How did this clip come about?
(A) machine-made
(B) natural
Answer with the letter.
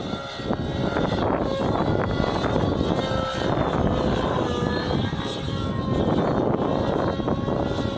B